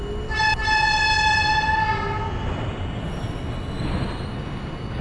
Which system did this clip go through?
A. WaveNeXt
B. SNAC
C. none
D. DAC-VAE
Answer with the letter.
C